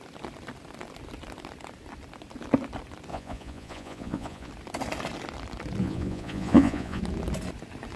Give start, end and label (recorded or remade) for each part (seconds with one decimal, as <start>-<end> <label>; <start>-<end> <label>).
0.0-3.1 recorded; 3.1-4.5 remade; 4.5-5.8 recorded; 5.8-7.0 remade; 7.0-8.0 recorded